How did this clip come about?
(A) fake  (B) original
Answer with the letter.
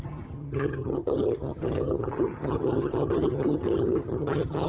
A